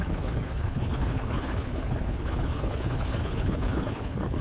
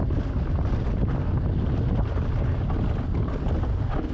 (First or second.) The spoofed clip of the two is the first